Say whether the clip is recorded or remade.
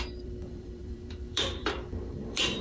remade